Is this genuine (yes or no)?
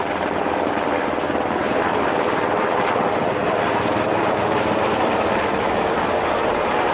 no